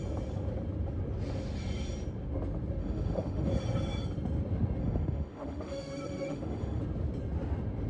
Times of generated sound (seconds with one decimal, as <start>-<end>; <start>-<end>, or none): 2.8-3.5; 4.8-6.8